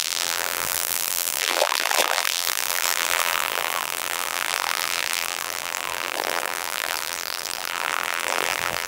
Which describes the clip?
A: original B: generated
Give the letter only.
B